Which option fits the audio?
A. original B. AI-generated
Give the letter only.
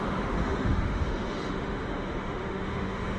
B